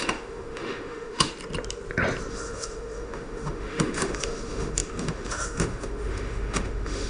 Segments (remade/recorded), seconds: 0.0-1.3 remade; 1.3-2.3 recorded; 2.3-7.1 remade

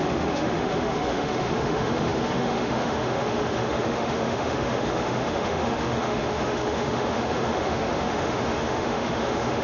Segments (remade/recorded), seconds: 0.0-9.6 remade

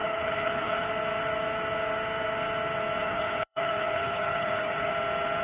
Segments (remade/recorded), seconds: 0.0-0.9 remade; 0.9-3.0 recorded; 3.0-4.9 remade; 4.9-5.4 recorded

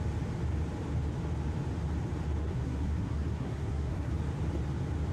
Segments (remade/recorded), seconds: 0.0-2.4 recorded; 2.4-4.1 remade; 4.1-5.1 recorded